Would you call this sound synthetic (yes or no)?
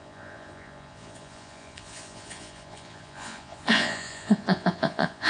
yes